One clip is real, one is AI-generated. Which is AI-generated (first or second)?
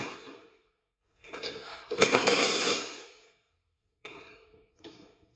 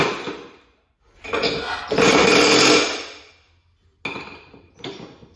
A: first